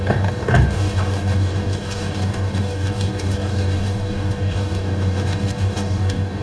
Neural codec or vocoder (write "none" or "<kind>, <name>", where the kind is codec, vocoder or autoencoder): codec, DAC